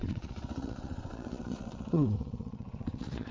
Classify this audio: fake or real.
fake